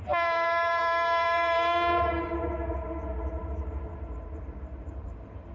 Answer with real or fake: fake